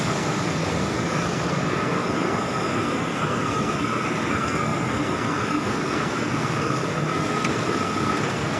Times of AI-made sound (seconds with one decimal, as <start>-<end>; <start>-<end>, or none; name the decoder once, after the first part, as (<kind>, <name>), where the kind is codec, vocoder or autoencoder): 0.0-8.6 (codec, SNAC)